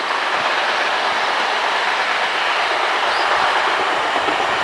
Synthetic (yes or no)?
yes